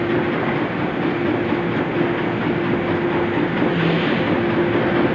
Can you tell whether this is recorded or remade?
recorded